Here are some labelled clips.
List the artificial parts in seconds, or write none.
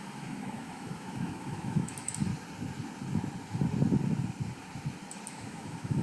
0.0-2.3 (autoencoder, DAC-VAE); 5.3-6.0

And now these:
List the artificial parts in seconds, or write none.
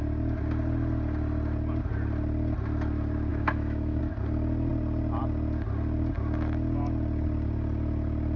3.3-4.0 (autoencoder, DAC-VAE)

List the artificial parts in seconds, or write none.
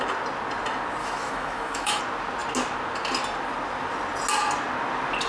1.0-2.0 (autoencoder, DAC-VAE)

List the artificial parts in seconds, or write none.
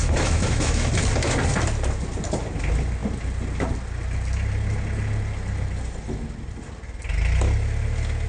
0.0-0.9 (autoencoder, DAC-VAE)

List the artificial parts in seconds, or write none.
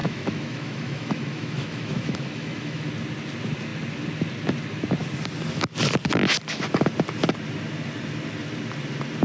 0.0-2.9 (autoencoder, DAC-VAE)